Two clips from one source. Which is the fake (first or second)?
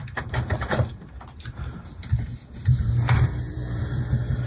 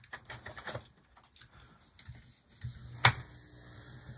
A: first